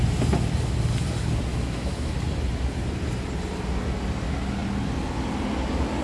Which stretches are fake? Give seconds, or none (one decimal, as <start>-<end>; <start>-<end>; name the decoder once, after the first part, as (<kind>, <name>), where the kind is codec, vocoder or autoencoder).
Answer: 1.5-2.1 (autoencoder, DAC-VAE)